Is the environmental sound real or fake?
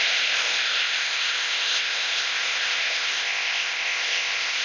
fake